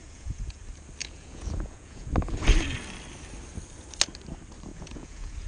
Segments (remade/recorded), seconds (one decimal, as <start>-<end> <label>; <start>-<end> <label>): 0.0-0.6 remade; 0.6-1.0 recorded; 1.0-2.1 remade; 2.1-4.7 recorded; 4.7-5.5 remade